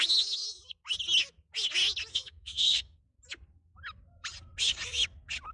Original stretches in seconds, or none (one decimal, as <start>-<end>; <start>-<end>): 0.0-2.1; 3.0-5.5